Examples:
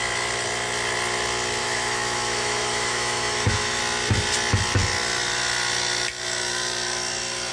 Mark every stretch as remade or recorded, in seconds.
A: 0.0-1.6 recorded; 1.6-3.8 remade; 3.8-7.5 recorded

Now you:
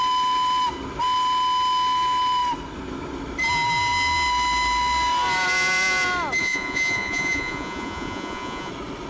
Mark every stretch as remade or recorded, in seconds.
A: 0.0-6.4 recorded; 6.4-8.7 remade; 8.7-9.1 recorded

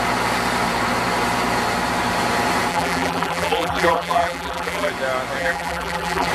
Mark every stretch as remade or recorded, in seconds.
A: 0.0-2.7 recorded; 2.7-4.9 remade; 4.9-5.4 recorded; 5.4-6.3 remade